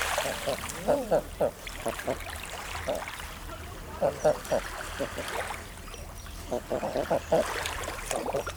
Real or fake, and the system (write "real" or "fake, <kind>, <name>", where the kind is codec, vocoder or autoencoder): fake, vocoder, BigVGAN v2